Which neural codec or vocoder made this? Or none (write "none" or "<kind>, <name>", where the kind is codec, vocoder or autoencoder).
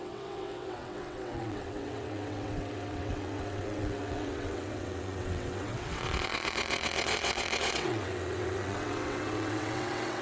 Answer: vocoder, WaveNeXt